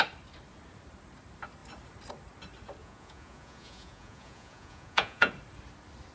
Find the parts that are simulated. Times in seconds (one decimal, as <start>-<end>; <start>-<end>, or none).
2.8-5.3